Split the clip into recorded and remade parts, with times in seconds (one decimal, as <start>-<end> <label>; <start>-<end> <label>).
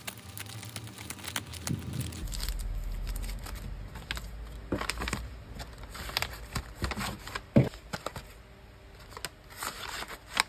0.0-10.5 recorded